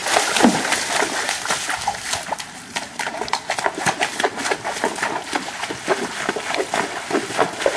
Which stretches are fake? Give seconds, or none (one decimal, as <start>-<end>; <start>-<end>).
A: none